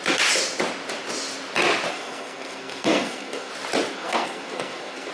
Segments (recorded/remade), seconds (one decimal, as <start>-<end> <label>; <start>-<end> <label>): 0.0-1.9 recorded; 1.9-3.5 remade; 3.5-3.9 recorded; 3.9-5.1 remade